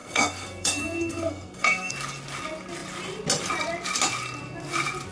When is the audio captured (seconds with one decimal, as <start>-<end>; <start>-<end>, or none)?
1.9-5.1